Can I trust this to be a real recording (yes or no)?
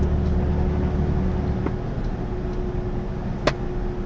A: yes